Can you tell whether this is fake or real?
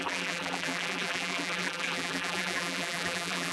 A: fake